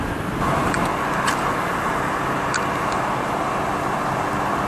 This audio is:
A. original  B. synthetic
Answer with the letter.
A